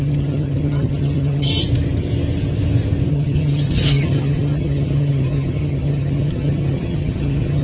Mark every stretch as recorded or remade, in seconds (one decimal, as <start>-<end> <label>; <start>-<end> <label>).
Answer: 0.0-1.5 remade; 1.5-3.1 recorded; 3.1-7.6 remade